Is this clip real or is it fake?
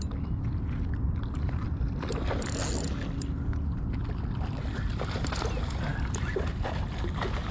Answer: real